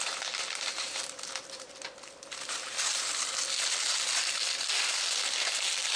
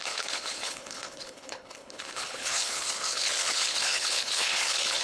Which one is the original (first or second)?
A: first